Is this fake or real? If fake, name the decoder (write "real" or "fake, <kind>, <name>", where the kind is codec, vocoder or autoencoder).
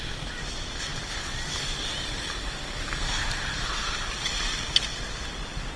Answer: real